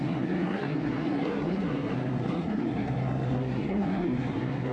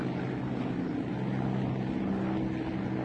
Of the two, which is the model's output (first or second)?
first